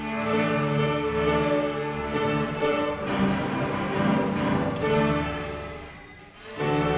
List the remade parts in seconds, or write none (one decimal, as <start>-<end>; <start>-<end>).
2.0-6.2